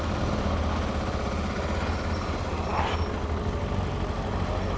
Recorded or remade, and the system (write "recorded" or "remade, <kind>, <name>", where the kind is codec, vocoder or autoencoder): recorded